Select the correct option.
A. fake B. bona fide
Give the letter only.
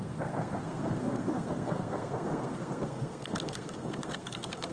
A